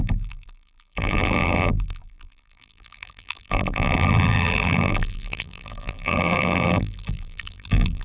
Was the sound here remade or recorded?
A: remade